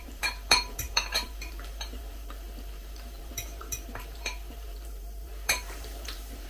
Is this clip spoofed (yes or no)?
yes